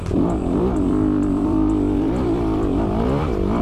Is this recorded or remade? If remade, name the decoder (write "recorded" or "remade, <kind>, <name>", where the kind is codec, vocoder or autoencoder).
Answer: remade, vocoder, BigVGAN v2